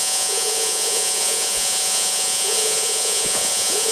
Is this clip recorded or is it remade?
remade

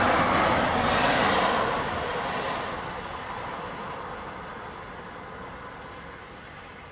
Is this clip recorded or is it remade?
recorded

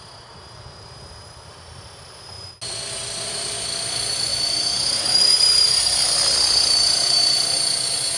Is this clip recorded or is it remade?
recorded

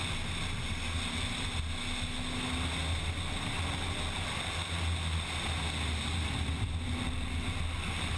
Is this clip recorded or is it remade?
recorded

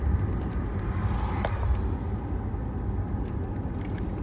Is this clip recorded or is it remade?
recorded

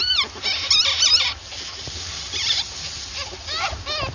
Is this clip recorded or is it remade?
recorded